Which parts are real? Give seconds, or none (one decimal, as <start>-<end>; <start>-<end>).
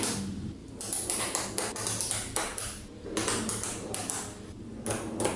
0.0-5.4